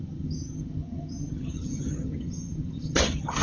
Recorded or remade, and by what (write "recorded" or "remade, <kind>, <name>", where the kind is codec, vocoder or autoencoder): remade, vocoder, HiFi-GAN